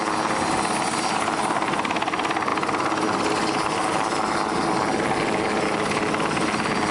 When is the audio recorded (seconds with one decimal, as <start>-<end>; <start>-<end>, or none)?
0.0-6.9